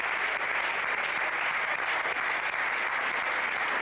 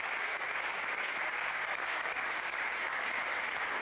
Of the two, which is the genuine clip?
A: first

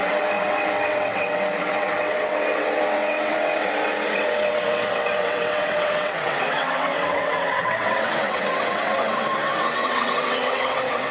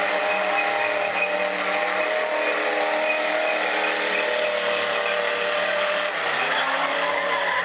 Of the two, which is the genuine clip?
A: second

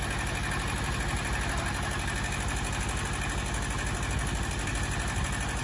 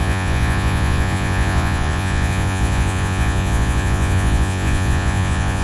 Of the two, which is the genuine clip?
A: first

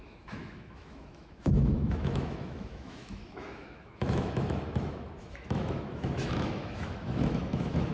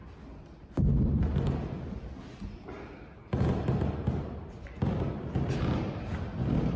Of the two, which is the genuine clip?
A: second